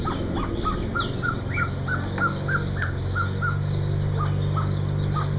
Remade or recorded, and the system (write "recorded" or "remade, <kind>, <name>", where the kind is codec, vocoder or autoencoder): recorded